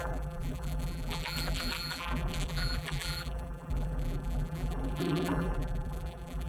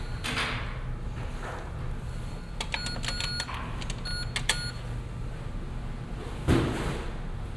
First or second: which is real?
second